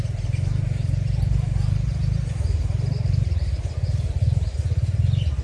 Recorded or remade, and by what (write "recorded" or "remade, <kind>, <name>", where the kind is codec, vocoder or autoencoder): recorded